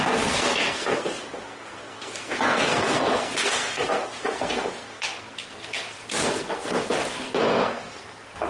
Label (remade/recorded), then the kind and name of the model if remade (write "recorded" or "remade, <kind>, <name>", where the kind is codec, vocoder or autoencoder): remade, codec, SNAC